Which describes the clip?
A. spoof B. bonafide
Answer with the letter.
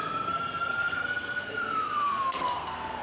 A